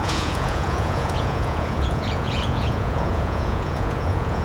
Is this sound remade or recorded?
remade